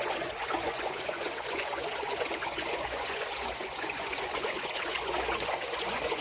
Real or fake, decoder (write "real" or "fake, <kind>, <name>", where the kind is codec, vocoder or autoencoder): fake, vocoder, Vocos